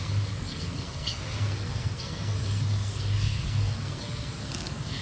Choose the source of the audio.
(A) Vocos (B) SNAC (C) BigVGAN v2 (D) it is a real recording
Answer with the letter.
B